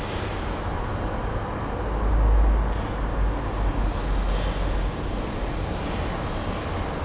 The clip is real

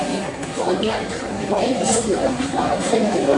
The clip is fake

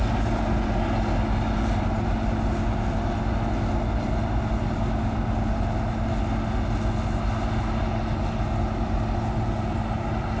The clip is real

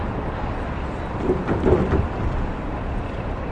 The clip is fake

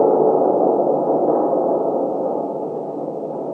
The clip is real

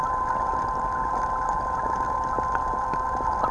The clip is real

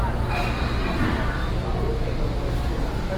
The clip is real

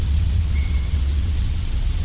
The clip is fake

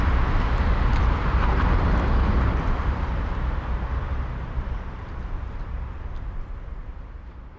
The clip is real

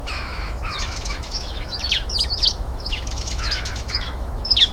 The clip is fake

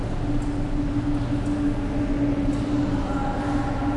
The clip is real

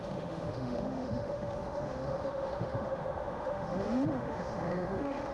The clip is fake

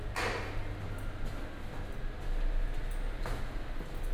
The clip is real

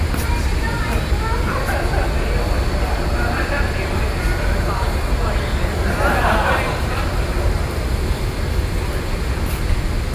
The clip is real